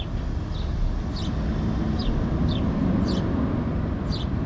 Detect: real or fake real